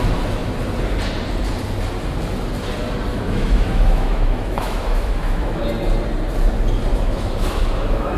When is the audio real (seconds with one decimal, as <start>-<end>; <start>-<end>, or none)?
0.0-3.1; 5.6-6.9